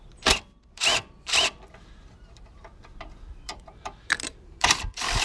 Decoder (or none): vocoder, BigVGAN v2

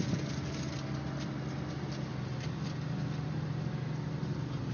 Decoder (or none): none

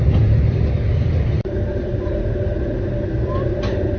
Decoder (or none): none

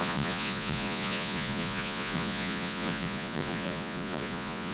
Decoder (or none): vocoder, Vocos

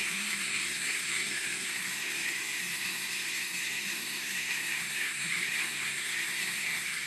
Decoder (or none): codec, SNAC